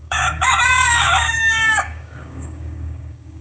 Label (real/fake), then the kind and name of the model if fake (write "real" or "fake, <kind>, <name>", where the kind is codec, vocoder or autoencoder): fake, codec, DAC